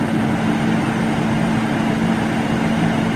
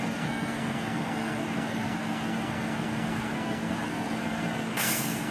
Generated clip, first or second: second